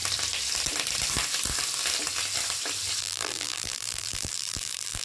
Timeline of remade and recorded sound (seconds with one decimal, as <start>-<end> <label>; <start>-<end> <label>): 0.0-3.0 recorded; 3.0-5.0 remade

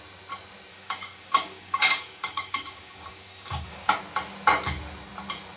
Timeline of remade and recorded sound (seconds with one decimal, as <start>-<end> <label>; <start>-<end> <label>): 0.0-0.7 recorded; 0.7-4.0 remade; 4.0-5.6 recorded

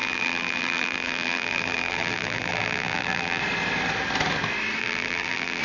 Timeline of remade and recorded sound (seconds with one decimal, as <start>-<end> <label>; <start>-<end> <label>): 0.0-3.4 remade; 3.4-4.8 recorded; 4.8-5.6 remade

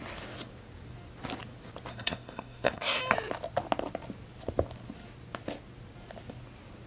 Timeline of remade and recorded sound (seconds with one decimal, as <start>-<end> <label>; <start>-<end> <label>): 0.0-1.9 recorded; 1.9-3.0 remade; 3.0-6.9 recorded

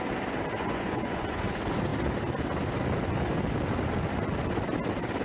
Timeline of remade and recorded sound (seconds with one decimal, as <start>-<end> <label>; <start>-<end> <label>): 0.0-0.5 recorded; 0.5-1.4 remade; 1.4-5.2 recorded

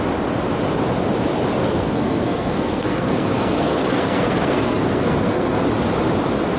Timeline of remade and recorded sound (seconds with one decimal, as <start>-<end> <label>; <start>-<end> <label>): 0.0-1.6 recorded; 1.6-5.6 remade; 5.6-6.6 recorded